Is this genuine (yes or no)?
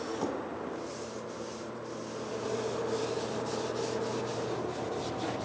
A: yes